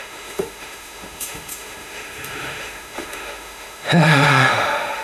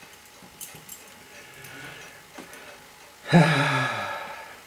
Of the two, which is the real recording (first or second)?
second